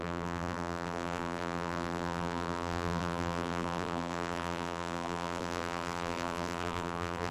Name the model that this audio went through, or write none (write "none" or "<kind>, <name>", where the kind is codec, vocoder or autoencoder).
vocoder, BigVGAN v2